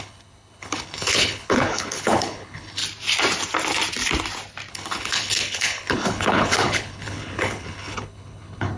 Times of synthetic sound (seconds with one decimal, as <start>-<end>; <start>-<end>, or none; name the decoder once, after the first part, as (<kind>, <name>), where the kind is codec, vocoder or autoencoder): 0.0-2.8 (codec, HILCodec); 4.7-8.8